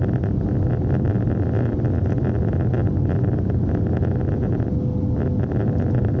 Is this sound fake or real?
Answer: real